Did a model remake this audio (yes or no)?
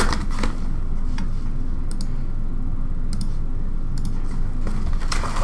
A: no